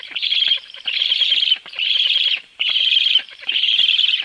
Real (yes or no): no